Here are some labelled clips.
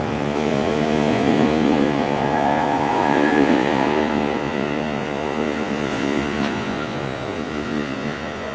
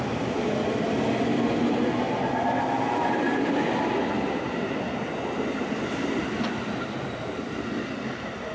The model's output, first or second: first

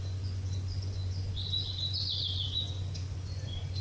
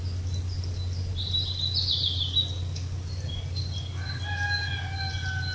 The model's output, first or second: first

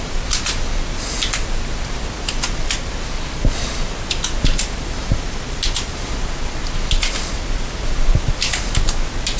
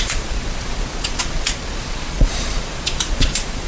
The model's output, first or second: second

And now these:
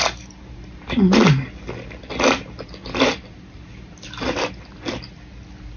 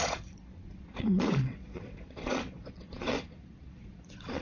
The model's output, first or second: second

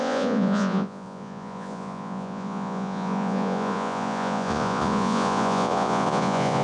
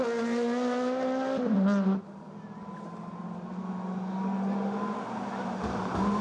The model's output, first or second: first